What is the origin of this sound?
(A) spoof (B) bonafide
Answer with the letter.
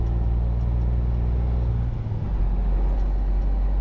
B